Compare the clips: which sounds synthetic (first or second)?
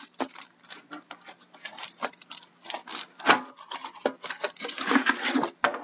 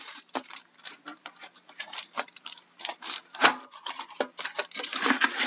second